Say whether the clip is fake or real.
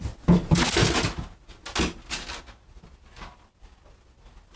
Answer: real